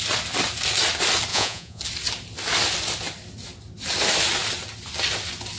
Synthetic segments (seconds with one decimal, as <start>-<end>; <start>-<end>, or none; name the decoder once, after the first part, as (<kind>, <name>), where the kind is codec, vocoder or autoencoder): 1.3-1.8 (vocoder, Vocos)